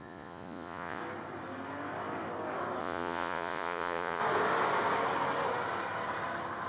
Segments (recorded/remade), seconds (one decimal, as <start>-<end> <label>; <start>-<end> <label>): 0.0-1.0 remade; 1.0-2.8 recorded; 2.8-4.2 remade; 4.2-6.7 recorded